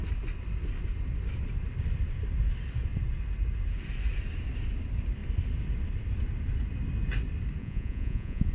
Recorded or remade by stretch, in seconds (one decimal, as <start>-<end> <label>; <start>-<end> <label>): 0.0-7.6 recorded; 7.6-8.5 remade